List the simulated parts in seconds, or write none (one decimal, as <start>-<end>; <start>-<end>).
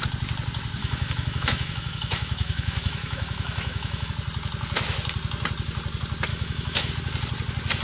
0.8-4.1; 6.3-6.9